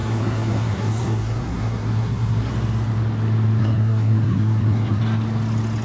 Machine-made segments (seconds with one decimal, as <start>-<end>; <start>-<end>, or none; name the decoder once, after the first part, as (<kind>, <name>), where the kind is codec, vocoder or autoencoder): 0.0-2.5 (codec, SNAC); 3.6-5.0